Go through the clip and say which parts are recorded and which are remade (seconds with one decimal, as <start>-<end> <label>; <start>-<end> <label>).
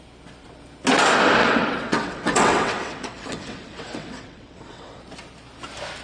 0.0-1.4 recorded; 1.4-5.0 remade; 5.0-6.0 recorded